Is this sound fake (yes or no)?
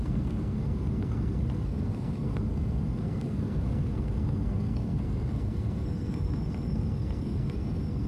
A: yes